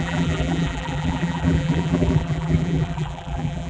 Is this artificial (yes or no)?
yes